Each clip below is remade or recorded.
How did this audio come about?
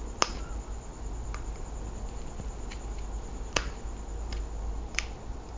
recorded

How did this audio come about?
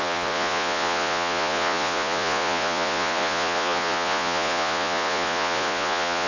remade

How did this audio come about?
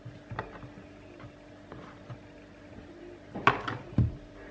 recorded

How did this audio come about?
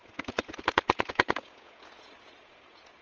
remade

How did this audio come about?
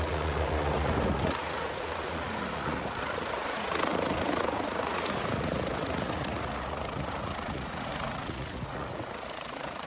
remade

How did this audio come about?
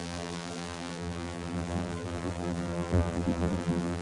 remade